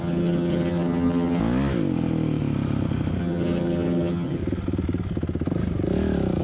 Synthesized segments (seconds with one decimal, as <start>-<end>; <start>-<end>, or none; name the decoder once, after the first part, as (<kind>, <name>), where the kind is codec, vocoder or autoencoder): 0.0-1.4 (vocoder, HiFi-GAN); 3.2-4.4